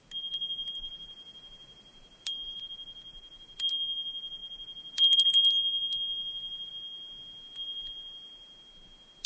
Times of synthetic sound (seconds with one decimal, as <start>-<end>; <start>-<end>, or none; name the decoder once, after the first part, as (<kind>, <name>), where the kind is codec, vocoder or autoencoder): 0.4-2.6 (vocoder, BigVGAN v2)

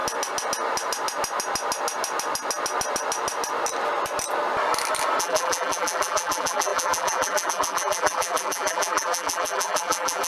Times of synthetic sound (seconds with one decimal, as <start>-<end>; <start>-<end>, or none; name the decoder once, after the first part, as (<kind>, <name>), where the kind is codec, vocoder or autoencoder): 5.2-10.3 (vocoder, BigVGAN v2)